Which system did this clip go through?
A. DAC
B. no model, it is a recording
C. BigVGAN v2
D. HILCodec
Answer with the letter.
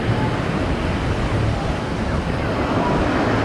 B